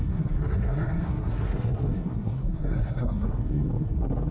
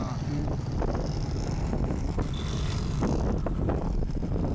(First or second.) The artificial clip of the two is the first